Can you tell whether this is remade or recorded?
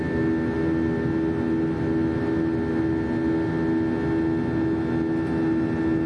recorded